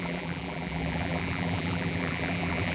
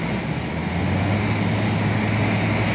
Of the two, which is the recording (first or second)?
second